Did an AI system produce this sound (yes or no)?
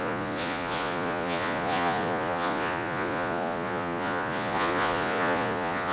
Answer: yes